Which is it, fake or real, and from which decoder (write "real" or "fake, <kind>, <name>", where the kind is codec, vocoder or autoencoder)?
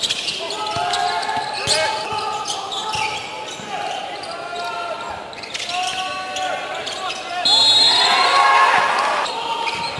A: real